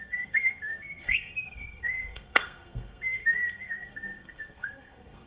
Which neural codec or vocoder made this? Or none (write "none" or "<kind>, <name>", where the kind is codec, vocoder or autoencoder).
codec, SNAC